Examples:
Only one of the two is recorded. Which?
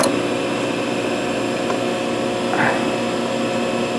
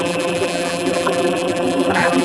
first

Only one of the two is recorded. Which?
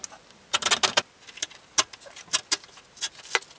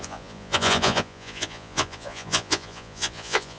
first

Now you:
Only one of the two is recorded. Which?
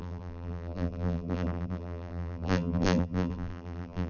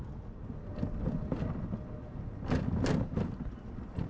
second